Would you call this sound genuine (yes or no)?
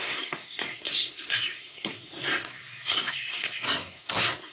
no